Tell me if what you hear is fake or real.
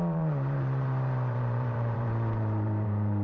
fake